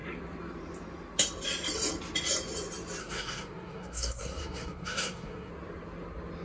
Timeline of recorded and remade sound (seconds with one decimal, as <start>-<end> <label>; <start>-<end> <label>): 0.0-3.0 recorded; 3.0-5.5 remade; 5.5-6.4 recorded